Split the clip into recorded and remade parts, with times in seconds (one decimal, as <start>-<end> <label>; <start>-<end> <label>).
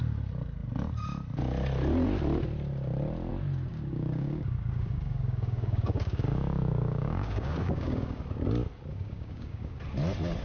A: 0.0-3.7 recorded; 3.7-8.2 remade; 8.2-8.9 recorded; 8.9-9.8 remade; 9.8-10.4 recorded